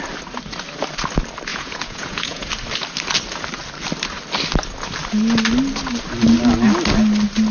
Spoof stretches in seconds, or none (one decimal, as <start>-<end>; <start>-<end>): 1.5-2.5